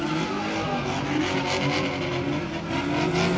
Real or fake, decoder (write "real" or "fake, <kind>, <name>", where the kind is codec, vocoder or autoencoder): real